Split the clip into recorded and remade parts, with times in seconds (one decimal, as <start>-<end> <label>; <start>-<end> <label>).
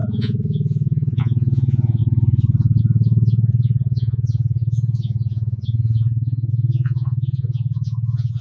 0.0-2.0 remade; 2.0-2.8 recorded; 2.8-8.4 remade